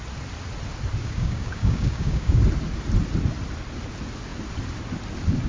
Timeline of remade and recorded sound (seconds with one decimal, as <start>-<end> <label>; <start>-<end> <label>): 0.0-1.0 recorded; 1.0-2.4 remade; 2.4-5.5 recorded